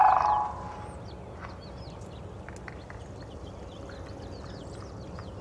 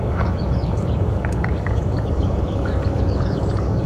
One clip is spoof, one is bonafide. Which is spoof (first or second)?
second